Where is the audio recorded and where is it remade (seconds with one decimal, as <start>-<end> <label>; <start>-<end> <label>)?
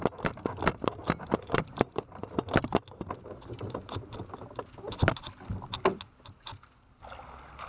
0.0-1.0 recorded; 1.0-2.3 remade; 2.3-7.7 recorded